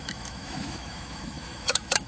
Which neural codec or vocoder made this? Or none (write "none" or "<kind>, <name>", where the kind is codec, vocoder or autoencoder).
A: autoencoder, DAC-VAE